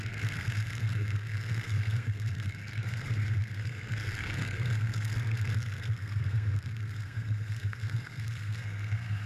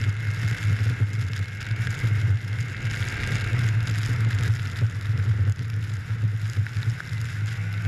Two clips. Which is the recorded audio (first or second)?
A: second